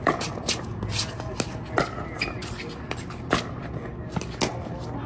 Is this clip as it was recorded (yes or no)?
yes